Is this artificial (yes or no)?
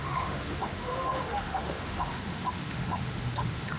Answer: yes